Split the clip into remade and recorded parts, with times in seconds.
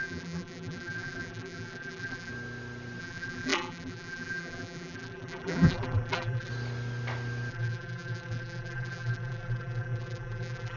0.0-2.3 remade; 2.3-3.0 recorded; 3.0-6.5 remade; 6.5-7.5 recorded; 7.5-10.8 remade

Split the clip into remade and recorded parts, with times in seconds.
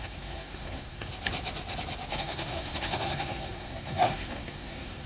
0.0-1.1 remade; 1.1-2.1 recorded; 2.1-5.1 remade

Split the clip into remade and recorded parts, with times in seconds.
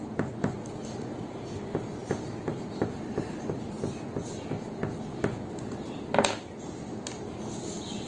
0.0-8.1 recorded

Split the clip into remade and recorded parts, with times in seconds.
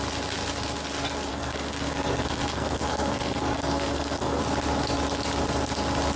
0.0-1.3 recorded; 1.3-4.4 remade; 4.4-6.2 recorded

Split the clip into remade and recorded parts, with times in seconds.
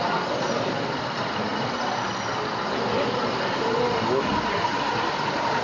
0.0-5.6 recorded